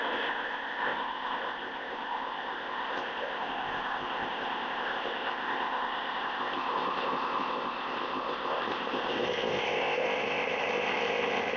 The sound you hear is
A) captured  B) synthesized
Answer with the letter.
B